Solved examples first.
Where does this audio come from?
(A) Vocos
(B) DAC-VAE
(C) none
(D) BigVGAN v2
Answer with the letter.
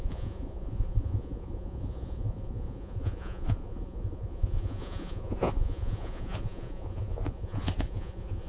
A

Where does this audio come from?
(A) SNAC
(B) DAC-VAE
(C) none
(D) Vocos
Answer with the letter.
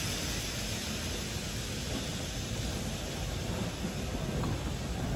C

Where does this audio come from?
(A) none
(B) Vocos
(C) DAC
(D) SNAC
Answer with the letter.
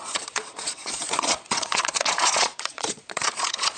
B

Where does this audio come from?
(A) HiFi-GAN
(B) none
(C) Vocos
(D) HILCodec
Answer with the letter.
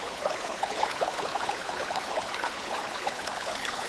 D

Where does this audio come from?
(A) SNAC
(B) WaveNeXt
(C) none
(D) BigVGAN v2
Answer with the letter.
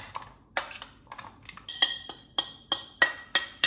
C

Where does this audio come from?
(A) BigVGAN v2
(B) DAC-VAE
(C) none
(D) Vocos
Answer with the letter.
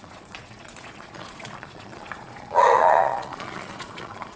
D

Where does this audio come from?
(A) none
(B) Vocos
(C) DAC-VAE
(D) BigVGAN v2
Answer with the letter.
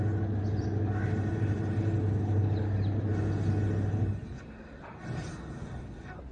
A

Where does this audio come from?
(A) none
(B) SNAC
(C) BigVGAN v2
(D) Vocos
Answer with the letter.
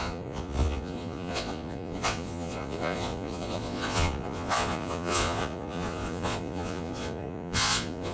D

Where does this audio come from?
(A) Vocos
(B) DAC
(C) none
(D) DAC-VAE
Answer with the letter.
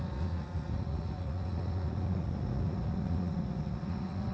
A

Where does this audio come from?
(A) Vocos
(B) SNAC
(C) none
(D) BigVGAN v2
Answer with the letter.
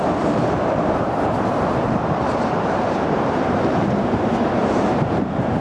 D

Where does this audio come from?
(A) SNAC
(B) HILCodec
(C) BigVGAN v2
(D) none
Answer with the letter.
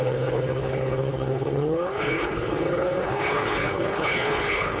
B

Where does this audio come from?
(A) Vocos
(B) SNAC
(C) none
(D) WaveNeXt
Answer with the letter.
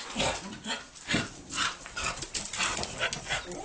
C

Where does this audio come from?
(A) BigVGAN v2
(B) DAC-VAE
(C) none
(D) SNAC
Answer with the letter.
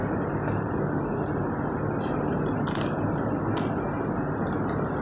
C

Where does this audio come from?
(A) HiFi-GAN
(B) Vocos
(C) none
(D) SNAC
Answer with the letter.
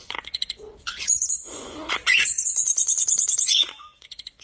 B